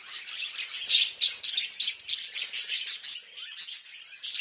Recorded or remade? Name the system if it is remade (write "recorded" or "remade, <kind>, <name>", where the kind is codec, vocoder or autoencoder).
recorded